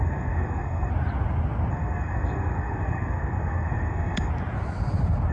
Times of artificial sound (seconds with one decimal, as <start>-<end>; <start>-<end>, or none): 0.0-0.9; 1.7-4.3